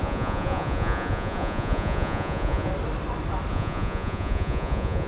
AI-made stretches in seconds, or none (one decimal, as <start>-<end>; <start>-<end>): 0.0-2.7; 3.5-5.1